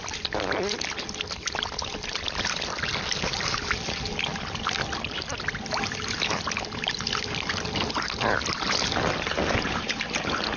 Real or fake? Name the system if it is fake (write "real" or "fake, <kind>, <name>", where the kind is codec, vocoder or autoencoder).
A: real